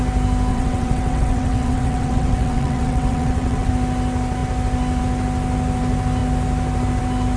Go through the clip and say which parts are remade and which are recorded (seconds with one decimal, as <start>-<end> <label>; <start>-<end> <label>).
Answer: 0.0-0.5 recorded; 0.5-3.7 remade; 3.7-7.4 recorded